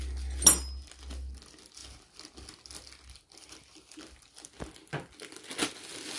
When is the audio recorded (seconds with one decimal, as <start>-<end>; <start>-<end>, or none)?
0.0-6.2